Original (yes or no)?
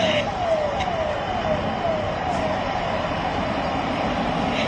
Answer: yes